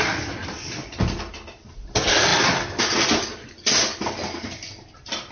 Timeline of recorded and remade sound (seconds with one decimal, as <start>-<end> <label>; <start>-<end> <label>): 0.0-5.3 recorded